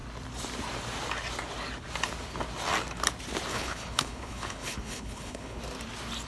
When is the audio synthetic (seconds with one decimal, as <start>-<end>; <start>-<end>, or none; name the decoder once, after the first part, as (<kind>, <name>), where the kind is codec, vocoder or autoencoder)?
3.5-5.6 (codec, HILCodec)